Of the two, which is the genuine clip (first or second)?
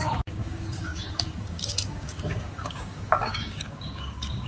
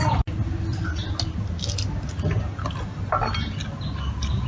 second